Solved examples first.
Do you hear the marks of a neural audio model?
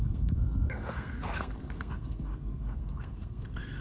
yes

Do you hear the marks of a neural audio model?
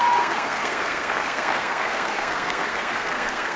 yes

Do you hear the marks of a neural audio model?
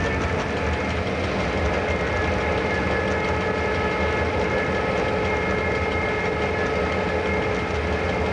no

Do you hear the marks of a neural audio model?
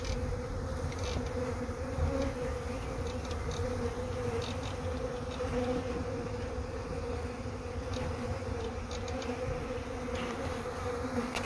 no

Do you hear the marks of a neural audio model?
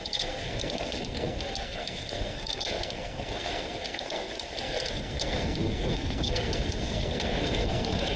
yes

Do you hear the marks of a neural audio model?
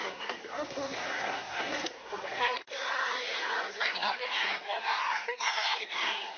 yes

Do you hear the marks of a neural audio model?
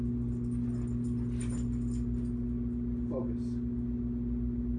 no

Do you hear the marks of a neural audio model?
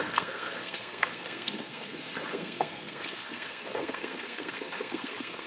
yes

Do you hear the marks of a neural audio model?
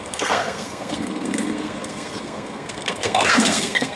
yes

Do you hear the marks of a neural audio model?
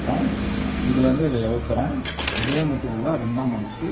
yes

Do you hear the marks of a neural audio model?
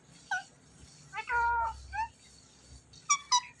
no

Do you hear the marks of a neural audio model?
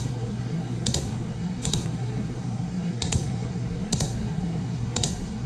yes